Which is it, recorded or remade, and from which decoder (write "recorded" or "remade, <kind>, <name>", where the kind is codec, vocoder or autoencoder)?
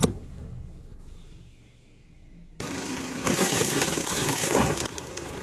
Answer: remade, codec, SNAC